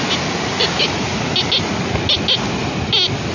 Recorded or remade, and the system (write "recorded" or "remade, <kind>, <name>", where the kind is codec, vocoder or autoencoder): recorded